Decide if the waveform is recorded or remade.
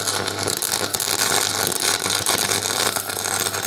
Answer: recorded